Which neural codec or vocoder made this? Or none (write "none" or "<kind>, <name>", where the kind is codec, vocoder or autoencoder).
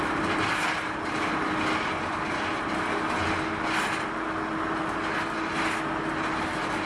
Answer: none